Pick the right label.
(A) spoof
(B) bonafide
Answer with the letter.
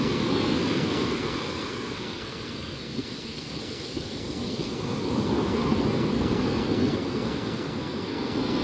A